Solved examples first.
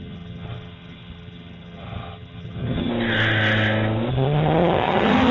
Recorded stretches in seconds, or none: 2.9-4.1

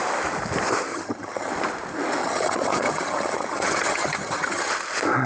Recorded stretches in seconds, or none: 0.0-0.9; 1.5-2.2; 4.7-5.3